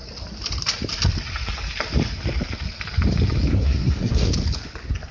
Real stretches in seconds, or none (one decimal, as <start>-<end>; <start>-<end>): 0.0-3.5; 4.3-5.1

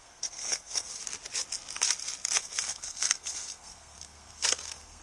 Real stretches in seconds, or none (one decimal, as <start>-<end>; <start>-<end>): 1.0-2.4

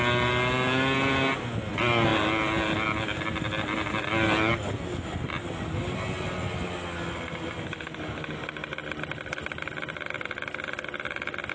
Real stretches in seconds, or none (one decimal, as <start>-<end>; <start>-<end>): 0.0-11.5

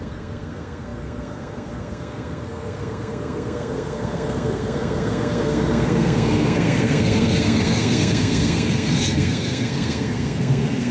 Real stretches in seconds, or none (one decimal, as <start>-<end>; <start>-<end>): none

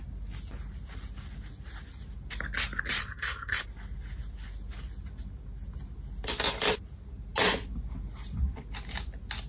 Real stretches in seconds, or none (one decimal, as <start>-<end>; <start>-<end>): 0.0-3.0; 3.6-9.5

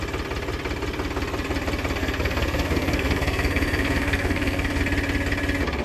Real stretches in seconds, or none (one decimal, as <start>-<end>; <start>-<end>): 0.0-2.0; 4.8-5.8

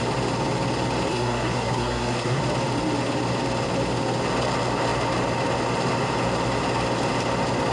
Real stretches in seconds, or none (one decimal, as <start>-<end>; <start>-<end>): 0.0-1.1; 2.4-7.7

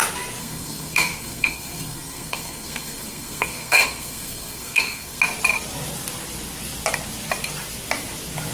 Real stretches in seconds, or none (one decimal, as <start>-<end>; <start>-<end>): 0.0-0.4; 5.2-8.5